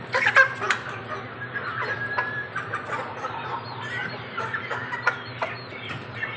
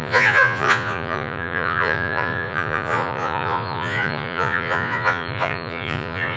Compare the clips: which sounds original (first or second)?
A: first